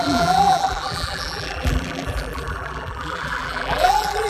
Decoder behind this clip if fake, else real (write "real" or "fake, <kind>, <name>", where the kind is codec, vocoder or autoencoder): fake, vocoder, BigVGAN v2